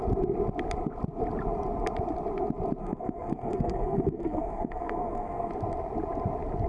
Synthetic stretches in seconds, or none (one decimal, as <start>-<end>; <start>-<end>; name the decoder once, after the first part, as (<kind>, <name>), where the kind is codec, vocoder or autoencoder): 2.8-5.5 (codec, SNAC)